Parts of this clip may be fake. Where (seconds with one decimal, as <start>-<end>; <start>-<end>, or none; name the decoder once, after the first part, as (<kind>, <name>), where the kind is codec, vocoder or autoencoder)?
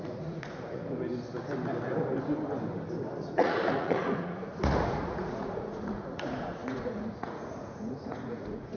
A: 0.0-0.8 (vocoder, Vocos); 3.2-8.8